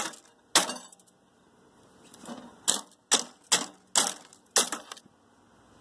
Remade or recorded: recorded